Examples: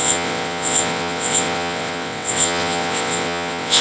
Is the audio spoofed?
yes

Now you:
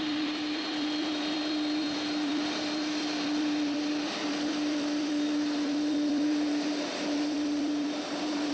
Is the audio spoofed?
yes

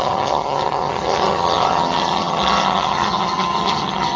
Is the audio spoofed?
yes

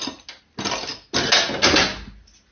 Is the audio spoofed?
no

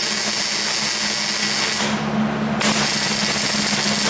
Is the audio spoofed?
no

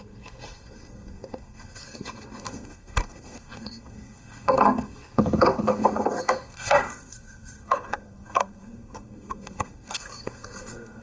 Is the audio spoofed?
yes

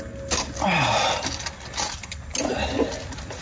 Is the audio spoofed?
no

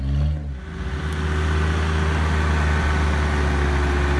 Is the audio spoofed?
no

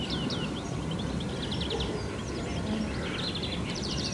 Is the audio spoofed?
no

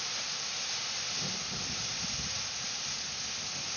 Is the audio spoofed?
no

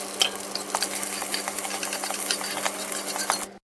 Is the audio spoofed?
no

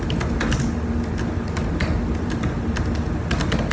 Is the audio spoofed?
no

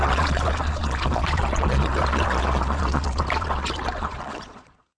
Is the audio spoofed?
yes